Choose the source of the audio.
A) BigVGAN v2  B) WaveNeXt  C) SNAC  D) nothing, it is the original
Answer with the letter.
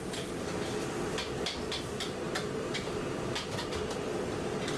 D